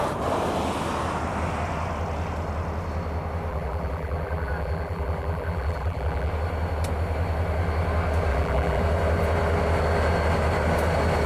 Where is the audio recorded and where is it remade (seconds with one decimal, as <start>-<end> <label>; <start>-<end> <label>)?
0.0-3.5 recorded; 3.5-6.3 remade; 6.3-8.3 recorded; 8.3-8.8 remade; 8.8-11.3 recorded